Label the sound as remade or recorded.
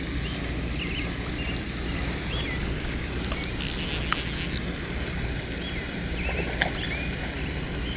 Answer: recorded